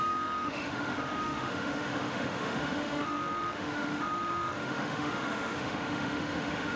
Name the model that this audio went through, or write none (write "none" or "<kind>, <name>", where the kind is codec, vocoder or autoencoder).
autoencoder, DAC-VAE